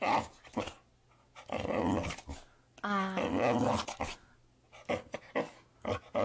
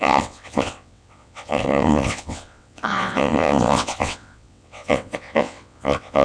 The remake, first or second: second